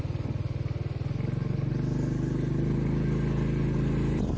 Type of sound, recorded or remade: recorded